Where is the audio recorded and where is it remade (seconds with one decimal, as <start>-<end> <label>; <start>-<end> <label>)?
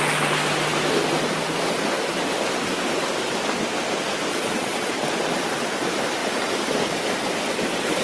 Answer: 0.0-4.3 recorded; 4.3-4.9 remade; 4.9-8.0 recorded